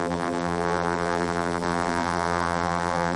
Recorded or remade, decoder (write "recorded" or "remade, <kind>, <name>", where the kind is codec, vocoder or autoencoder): remade, vocoder, BigVGAN v2